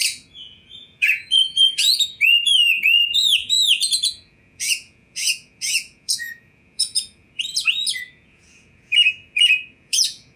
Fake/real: fake